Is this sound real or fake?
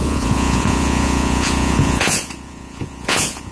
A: fake